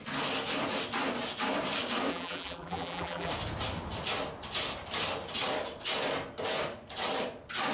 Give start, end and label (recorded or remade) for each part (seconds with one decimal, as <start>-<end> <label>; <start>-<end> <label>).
0.0-2.1 recorded; 2.1-3.3 remade; 3.3-7.7 recorded